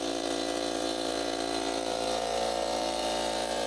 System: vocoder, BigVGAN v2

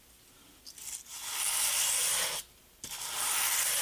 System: none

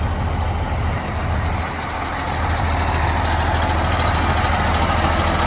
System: none